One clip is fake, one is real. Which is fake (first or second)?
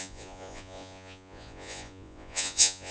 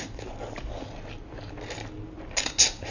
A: first